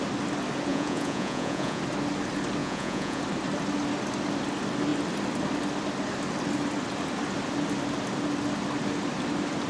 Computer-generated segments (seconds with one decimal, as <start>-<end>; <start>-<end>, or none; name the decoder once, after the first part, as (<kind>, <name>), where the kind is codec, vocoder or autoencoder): 0.7-1.8 (vocoder, Vocos); 2.6-3.2